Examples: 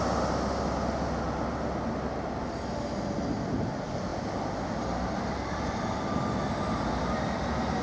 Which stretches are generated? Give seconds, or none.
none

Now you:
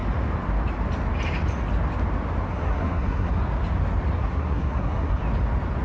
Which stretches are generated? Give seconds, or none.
2.5-3.3 (codec, SNAC); 4.2-5.2

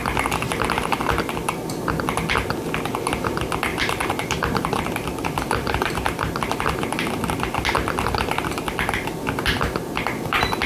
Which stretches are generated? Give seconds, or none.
3.7-7.1 (vocoder, BigVGAN v2)

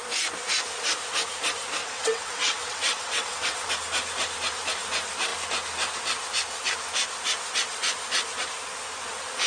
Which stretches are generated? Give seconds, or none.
1.8-3.7 (vocoder, WaveNeXt)

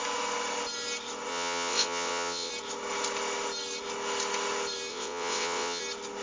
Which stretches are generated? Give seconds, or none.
1.3-2.5 (vocoder, WaveNeXt); 4.9-5.8

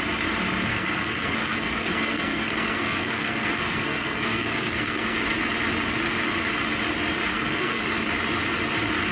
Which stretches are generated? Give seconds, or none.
0.7-5.2 (codec, SNAC); 7.3-7.8